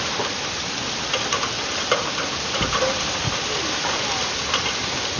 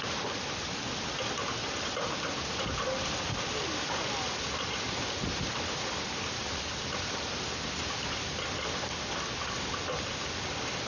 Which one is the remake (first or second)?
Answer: first